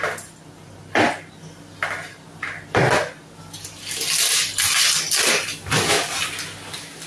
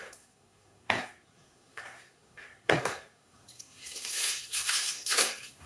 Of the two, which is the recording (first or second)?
first